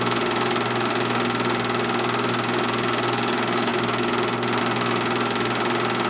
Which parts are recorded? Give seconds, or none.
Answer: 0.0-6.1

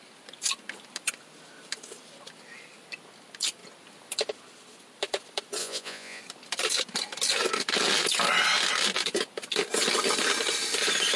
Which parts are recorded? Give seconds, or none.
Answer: 0.0-5.6; 6.2-11.2

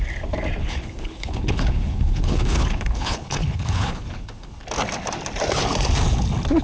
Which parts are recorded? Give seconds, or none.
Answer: 0.0-0.6; 4.6-6.6

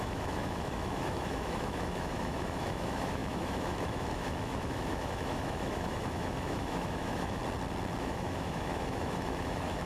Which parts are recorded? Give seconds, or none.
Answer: 7.4-8.0

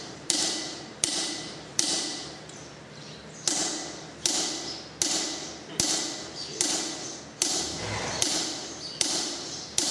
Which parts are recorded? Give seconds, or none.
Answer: 3.2-8.2

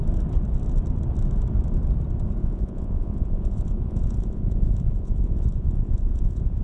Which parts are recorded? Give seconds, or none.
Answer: 0.0-2.4